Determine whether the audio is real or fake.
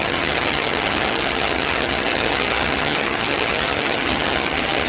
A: fake